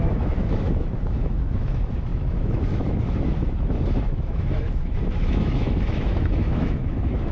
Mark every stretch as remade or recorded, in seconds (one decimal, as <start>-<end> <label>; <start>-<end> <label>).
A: 0.0-7.3 remade